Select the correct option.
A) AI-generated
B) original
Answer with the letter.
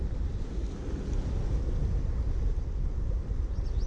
B